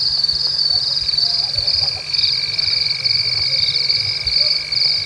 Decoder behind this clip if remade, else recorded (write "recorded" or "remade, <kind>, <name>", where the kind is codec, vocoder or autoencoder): recorded